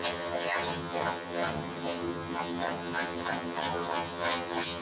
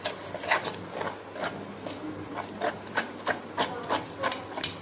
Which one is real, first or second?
second